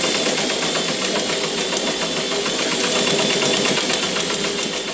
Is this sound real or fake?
real